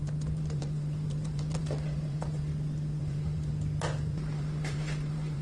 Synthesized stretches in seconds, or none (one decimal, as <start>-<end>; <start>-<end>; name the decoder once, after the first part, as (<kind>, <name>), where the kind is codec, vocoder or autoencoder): 0.0-2.5 (vocoder, BigVGAN v2); 3.0-3.5; 4.0-5.4